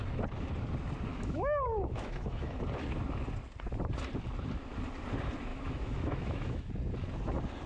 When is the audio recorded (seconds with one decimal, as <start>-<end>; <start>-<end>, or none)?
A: 0.0-1.1; 2.6-5.5; 6.7-7.7